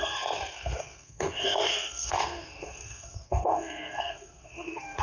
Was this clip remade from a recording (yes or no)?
yes